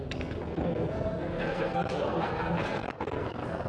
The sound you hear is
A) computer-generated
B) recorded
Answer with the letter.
A